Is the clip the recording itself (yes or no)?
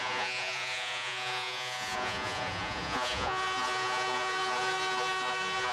no